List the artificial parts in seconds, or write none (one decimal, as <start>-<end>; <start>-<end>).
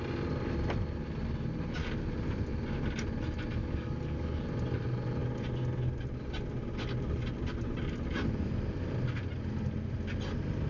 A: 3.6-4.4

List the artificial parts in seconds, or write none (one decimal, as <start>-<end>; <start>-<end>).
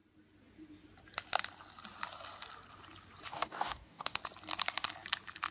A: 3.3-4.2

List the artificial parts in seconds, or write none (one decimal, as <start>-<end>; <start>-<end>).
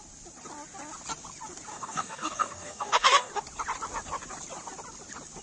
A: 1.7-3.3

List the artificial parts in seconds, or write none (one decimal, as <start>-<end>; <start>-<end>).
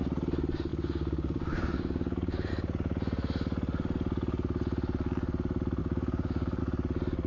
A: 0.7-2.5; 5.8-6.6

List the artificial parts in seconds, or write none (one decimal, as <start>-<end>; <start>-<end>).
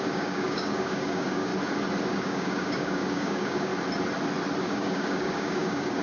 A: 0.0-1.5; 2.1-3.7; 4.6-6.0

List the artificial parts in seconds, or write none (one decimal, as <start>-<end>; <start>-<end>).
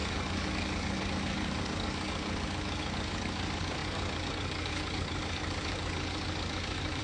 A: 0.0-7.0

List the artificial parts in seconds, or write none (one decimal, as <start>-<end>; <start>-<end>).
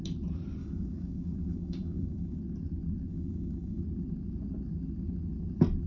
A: 0.6-2.4; 3.1-3.8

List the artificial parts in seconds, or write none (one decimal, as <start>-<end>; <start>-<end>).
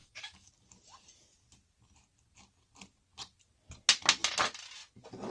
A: 0.0-0.5